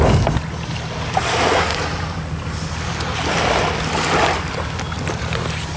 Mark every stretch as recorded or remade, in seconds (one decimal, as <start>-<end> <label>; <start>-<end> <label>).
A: 0.0-5.8 recorded